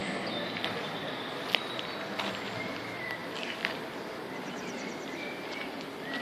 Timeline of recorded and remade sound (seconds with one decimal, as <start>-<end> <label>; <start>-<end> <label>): 0.0-3.2 recorded; 3.2-5.6 remade; 5.6-6.2 recorded